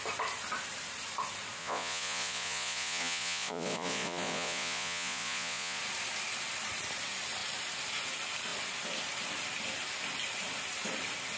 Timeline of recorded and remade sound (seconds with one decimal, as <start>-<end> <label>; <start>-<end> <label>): 0.0-1.6 recorded; 1.6-5.8 remade; 5.8-11.4 recorded